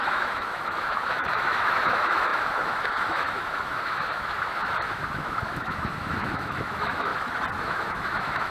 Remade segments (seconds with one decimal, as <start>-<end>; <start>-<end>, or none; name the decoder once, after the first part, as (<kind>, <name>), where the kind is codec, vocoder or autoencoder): 0.0-7.1 (autoencoder, DAC-VAE); 7.6-8.5